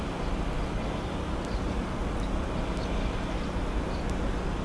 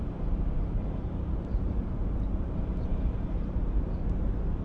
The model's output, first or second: second